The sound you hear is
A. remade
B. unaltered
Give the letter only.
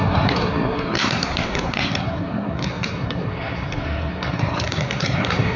A